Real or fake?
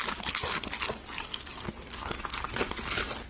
real